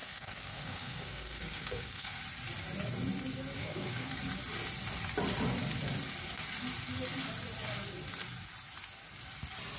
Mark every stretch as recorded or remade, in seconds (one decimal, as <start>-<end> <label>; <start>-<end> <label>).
0.0-2.2 remade; 2.2-3.6 recorded; 3.6-4.2 remade; 4.2-9.8 recorded